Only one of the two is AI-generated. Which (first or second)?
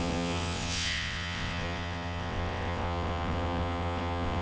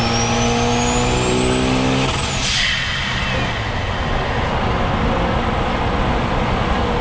first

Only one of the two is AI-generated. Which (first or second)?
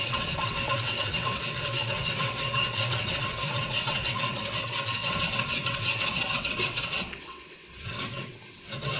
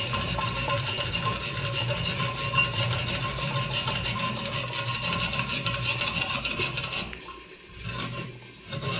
first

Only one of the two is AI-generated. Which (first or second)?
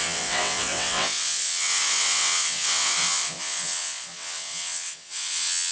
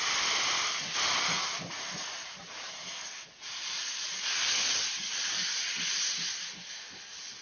first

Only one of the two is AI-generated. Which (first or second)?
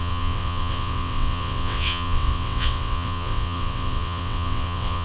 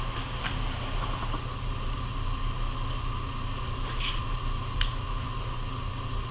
first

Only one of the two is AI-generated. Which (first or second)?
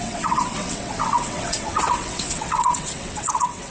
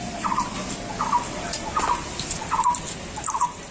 first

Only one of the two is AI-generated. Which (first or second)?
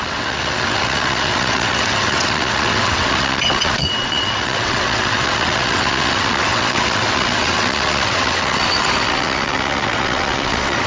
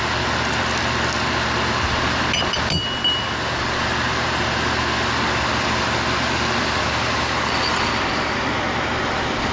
first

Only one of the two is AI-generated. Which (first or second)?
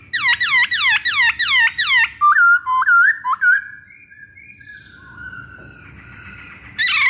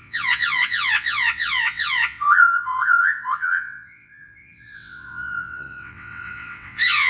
second